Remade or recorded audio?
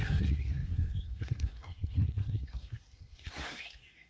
remade